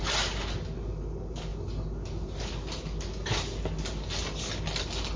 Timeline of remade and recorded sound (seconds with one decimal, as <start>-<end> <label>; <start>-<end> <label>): 0.0-5.2 recorded